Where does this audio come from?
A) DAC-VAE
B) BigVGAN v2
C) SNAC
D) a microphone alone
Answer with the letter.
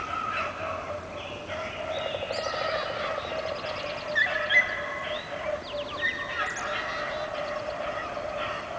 D